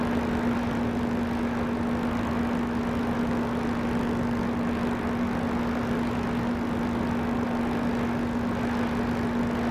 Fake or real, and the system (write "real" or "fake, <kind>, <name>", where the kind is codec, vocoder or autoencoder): real